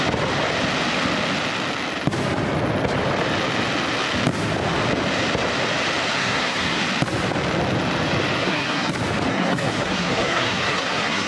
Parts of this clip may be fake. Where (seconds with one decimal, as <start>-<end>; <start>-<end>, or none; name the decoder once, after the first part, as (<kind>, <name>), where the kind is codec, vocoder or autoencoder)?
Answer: 6.2-6.8 (codec, SNAC); 8.4-8.9; 9.3-11.3